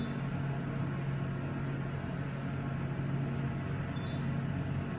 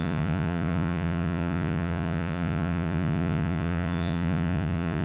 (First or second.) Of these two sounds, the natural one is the first